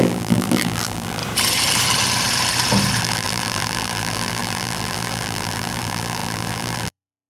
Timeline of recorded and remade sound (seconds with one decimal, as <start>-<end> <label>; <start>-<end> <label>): 0.0-1.2 remade; 1.2-3.0 recorded; 3.0-7.3 remade